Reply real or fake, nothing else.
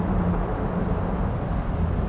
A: real